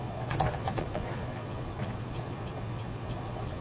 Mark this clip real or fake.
fake